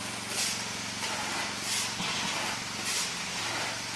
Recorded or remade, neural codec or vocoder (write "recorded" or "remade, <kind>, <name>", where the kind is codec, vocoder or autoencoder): recorded